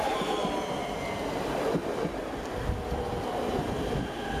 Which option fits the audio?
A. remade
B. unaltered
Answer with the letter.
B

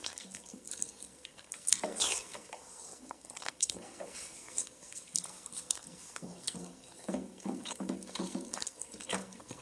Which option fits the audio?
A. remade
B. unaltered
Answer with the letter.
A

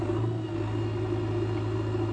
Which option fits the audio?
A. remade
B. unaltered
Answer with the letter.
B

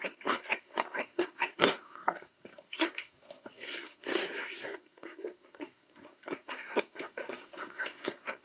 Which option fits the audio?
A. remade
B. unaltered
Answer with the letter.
A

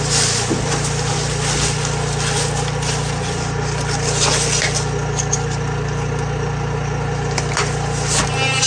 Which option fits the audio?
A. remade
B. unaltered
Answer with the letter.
B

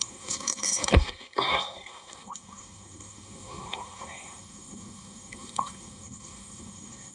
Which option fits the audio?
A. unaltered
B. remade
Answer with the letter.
B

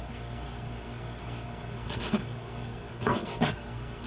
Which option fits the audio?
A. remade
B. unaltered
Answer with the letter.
A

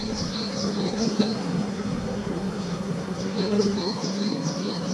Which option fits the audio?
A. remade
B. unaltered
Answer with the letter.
A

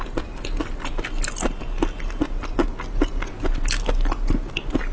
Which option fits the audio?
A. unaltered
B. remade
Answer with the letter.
A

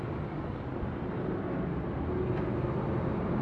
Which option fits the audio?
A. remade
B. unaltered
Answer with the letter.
B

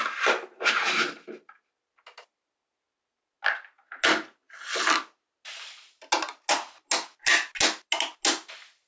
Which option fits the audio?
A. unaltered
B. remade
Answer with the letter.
A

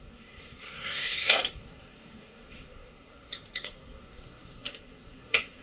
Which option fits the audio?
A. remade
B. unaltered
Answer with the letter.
A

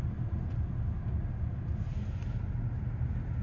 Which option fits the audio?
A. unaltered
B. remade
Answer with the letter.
A